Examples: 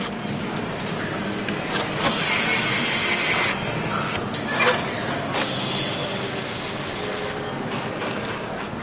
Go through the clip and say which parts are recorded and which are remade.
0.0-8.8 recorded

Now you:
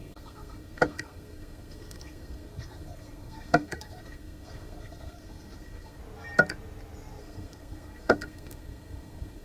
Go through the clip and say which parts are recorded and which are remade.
0.0-6.0 remade; 6.0-7.2 recorded; 7.2-9.4 remade

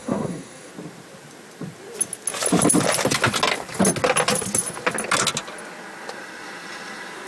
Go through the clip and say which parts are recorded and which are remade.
0.0-0.7 remade; 0.7-7.3 recorded

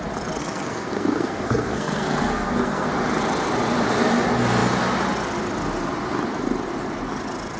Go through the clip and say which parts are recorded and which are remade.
0.0-0.4 recorded; 0.4-2.9 remade; 2.9-7.6 recorded

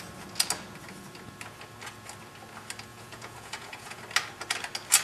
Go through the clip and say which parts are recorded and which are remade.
0.0-2.9 recorded; 2.9-4.0 remade; 4.0-5.0 recorded

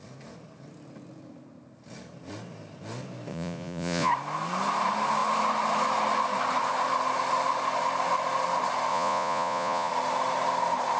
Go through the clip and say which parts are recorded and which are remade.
0.0-3.3 recorded; 3.3-4.1 remade; 4.1-8.9 recorded; 8.9-9.9 remade; 9.9-11.0 recorded

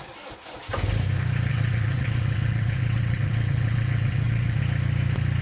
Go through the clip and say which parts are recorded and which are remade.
0.0-1.5 recorded; 1.5-4.6 remade; 4.6-5.4 recorded